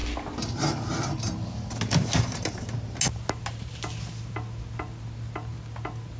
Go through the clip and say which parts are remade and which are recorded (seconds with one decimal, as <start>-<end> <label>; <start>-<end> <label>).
0.0-6.2 recorded